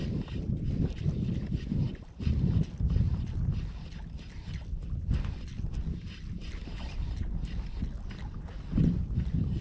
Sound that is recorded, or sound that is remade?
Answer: recorded